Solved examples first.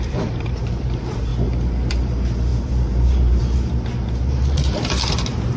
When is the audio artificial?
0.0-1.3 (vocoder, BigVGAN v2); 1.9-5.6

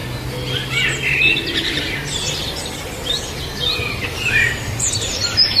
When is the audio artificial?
none

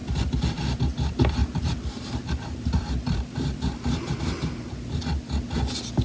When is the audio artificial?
0.0-0.8 (vocoder, BigVGAN v2); 1.4-4.0